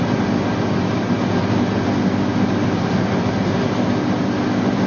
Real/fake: real